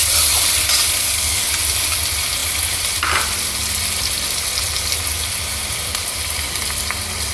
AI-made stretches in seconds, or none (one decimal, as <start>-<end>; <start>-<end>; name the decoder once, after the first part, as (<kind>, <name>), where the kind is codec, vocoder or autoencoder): 1.0-1.5 (codec, SNAC)